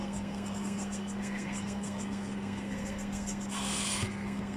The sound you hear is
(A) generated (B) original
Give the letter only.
A